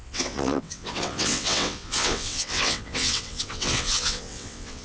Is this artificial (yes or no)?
yes